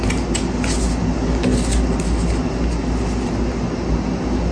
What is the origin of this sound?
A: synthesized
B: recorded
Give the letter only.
B